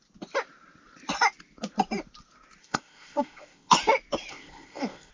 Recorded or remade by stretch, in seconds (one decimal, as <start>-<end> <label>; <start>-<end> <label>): 0.0-2.6 recorded; 2.6-3.7 remade; 3.7-4.3 recorded; 4.3-5.1 remade